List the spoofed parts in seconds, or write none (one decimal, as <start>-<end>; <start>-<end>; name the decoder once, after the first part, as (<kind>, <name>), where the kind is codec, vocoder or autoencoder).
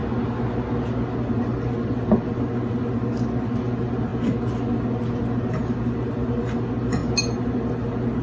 none